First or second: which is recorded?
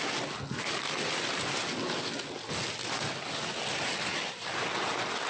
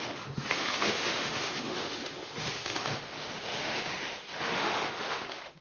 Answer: first